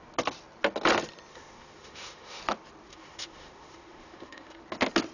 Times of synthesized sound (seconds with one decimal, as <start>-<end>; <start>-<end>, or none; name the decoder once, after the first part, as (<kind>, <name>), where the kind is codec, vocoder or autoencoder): 1.3-2.4 (autoencoder, DAC-VAE); 2.9-4.6